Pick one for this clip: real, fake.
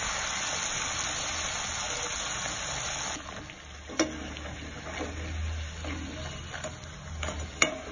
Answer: real